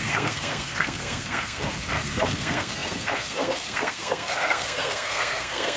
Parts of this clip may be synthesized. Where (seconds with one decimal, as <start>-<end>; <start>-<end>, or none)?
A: 0.0-5.8